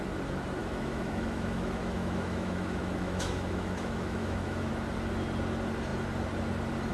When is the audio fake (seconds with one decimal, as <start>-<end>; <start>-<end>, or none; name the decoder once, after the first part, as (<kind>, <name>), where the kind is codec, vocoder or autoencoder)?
0.6-4.7 (autoencoder, DAC-VAE)